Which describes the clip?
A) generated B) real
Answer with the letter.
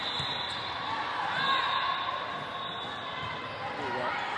B